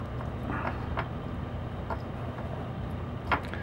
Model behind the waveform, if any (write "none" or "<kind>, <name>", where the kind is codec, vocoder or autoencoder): none